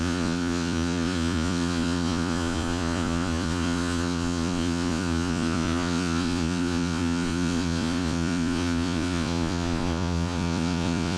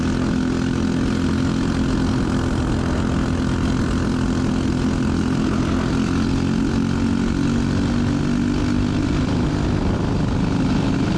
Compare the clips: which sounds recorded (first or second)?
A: second